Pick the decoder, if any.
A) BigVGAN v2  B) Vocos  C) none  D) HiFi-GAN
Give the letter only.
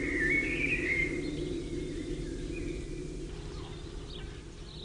C